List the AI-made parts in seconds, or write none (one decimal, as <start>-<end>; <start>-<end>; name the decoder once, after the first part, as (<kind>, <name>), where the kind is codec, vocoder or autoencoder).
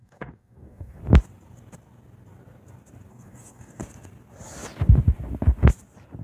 0.0-1.0 (codec, DAC); 3.1-3.8